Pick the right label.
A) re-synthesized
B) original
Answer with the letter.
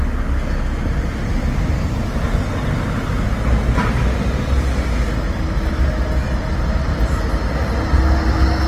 B